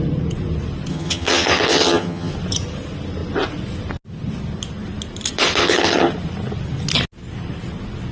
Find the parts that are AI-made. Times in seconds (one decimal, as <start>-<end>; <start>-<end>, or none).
0.9-2.3; 5.6-6.1